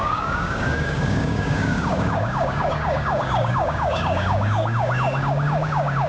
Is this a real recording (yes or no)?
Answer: no